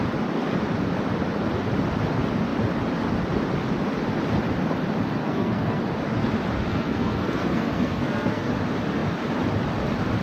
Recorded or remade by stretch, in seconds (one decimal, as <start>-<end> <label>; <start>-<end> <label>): 0.0-5.2 recorded; 5.2-5.8 remade; 5.8-6.7 recorded; 6.7-8.5 remade; 8.5-10.2 recorded